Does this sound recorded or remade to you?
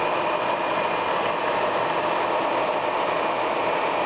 recorded